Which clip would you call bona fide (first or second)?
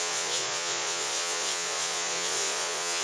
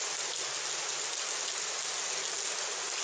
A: second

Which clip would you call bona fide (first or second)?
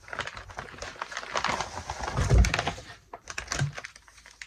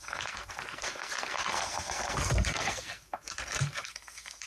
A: first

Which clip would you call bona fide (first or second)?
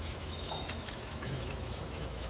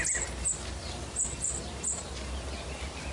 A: second